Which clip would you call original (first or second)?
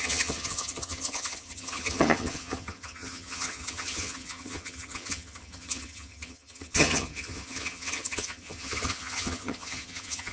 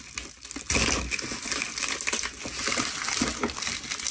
second